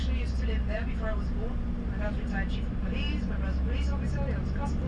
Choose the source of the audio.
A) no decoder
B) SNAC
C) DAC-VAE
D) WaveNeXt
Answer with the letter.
A